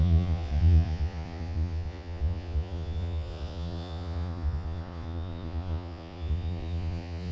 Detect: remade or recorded remade